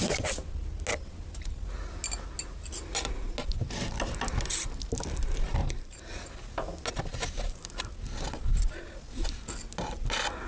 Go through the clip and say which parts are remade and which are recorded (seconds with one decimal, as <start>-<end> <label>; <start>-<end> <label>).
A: 0.0-5.6 recorded; 5.6-6.1 remade; 6.1-7.1 recorded; 7.1-7.9 remade; 7.9-10.5 recorded